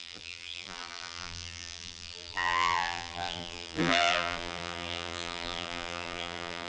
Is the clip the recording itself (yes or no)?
no